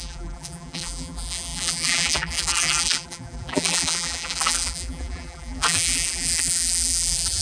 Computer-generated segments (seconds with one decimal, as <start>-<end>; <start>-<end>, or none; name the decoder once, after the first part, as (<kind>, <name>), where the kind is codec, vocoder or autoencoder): 0.0-7.4 (vocoder, BigVGAN v2)